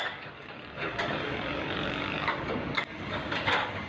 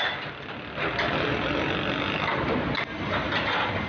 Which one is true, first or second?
second